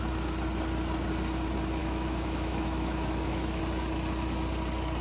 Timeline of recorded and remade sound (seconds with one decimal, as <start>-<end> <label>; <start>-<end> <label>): 0.0-1.8 recorded; 1.8-3.6 remade; 3.6-5.0 recorded